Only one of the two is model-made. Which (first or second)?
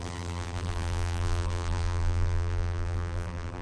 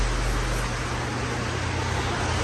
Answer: first